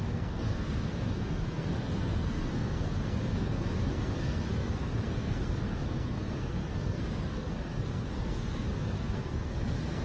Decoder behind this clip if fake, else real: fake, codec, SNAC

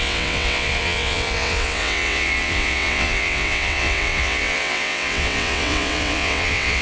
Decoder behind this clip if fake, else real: fake, vocoder, WaveNeXt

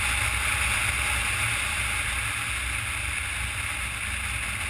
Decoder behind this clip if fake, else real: real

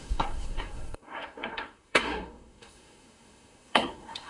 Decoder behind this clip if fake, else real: fake, codec, SNAC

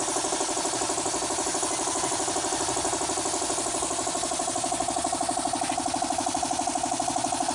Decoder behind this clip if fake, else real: real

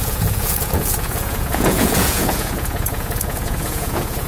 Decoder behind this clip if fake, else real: fake, vocoder, Vocos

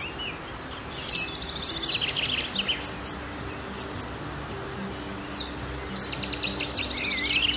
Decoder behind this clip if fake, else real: real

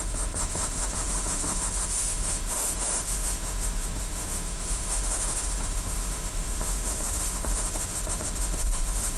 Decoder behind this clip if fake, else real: fake, autoencoder, DAC-VAE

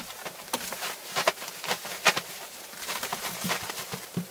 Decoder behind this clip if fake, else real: fake, vocoder, BigVGAN v2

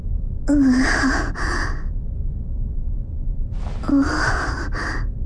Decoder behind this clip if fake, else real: real